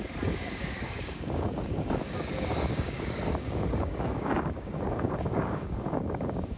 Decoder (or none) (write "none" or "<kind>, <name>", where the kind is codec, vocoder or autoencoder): codec, DAC